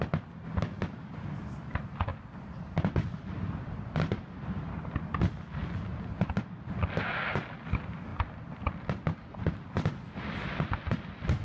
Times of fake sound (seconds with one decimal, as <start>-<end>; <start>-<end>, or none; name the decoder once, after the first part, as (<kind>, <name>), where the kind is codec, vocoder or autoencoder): none